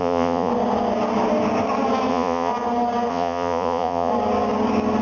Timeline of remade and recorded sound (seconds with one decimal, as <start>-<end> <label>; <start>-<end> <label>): 0.0-0.5 remade; 0.5-2.1 recorded; 2.1-2.5 remade; 2.5-3.1 recorded; 3.1-4.1 remade; 4.1-5.0 recorded